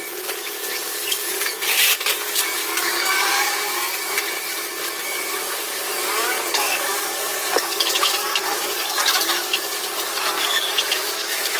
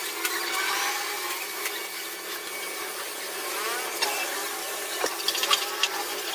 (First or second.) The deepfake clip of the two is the first